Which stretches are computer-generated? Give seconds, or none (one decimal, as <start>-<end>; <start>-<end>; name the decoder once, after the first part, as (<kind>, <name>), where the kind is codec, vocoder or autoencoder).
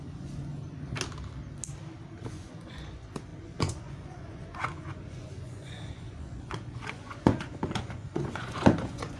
0.0-0.5 (vocoder, Vocos); 2.3-9.2